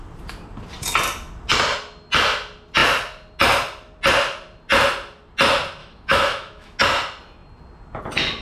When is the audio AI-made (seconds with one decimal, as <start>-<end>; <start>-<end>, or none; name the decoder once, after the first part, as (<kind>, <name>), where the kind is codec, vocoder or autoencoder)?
5.8-6.8 (autoencoder, DAC-VAE)